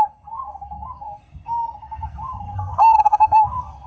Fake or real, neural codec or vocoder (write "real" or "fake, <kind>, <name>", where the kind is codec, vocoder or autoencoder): fake, codec, SNAC